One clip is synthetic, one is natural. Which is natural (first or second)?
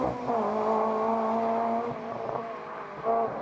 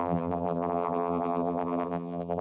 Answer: first